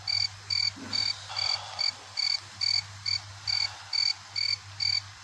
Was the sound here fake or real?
real